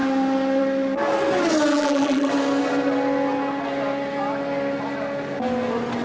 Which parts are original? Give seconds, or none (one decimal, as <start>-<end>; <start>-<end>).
0.0-1.7; 2.3-6.0